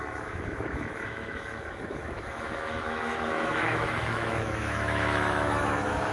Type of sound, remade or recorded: remade